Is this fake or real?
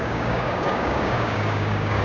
fake